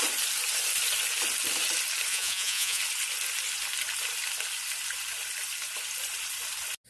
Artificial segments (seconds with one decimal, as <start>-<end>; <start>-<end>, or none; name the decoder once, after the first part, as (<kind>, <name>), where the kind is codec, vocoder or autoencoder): 2.1-2.8 (vocoder, Vocos)